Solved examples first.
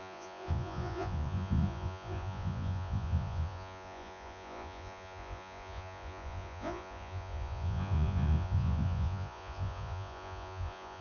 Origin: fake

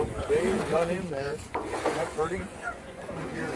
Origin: fake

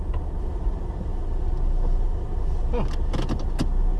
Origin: real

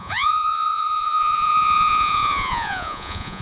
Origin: fake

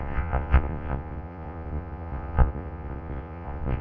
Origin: fake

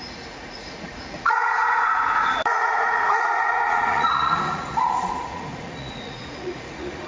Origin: fake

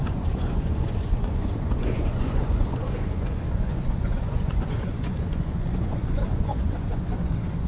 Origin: fake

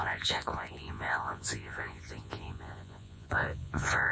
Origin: fake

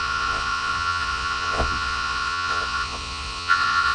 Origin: fake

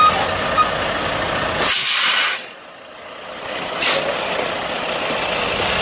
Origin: real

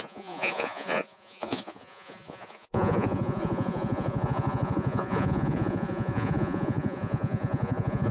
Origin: fake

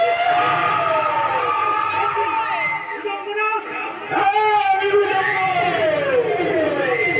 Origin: real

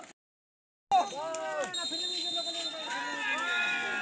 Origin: real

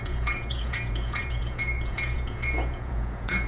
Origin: fake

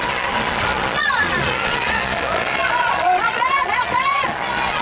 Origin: fake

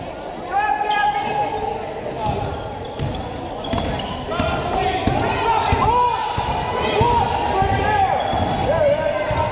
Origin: real